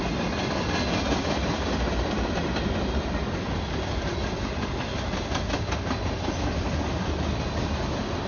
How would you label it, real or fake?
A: real